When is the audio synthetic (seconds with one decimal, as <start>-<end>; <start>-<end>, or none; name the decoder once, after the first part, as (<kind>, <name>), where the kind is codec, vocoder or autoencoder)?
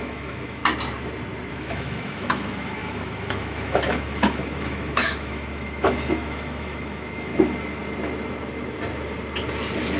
0.0-0.6 (autoencoder, DAC-VAE); 1.5-7.3